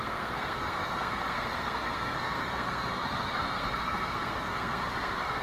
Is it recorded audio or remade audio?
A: remade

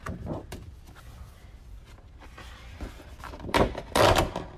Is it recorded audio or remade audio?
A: recorded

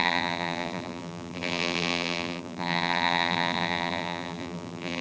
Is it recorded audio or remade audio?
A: remade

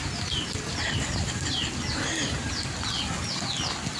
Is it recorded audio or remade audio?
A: recorded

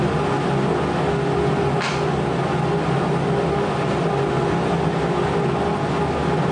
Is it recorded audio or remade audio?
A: recorded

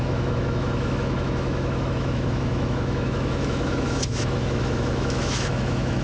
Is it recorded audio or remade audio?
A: remade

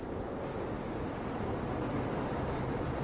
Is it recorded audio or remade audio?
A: recorded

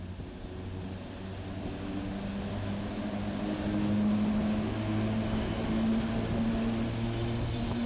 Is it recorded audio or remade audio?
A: recorded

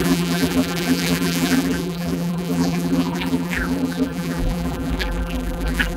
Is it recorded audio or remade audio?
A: remade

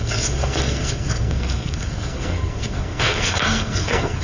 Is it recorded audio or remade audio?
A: remade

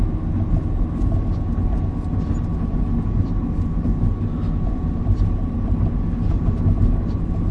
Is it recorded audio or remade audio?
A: recorded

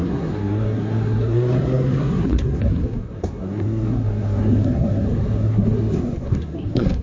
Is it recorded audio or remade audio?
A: remade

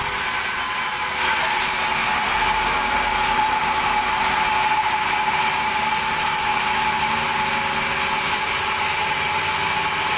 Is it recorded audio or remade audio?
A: recorded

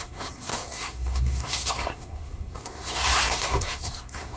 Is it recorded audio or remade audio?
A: remade